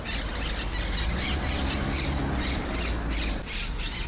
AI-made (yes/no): no